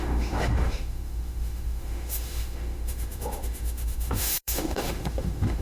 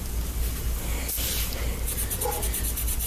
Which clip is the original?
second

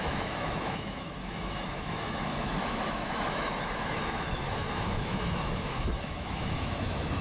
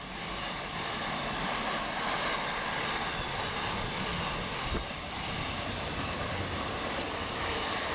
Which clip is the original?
second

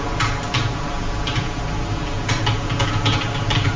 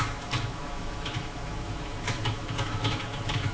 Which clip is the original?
first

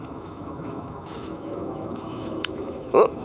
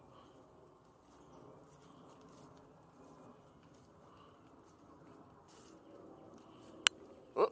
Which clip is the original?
second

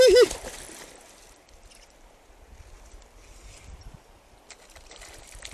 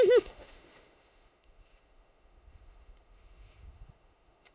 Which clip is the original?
first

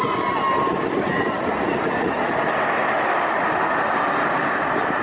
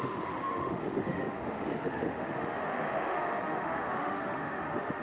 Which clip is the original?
first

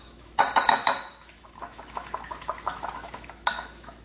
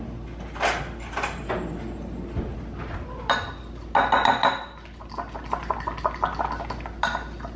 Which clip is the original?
second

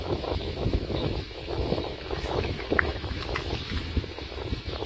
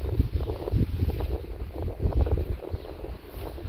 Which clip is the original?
second